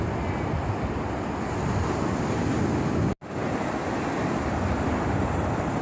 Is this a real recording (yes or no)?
yes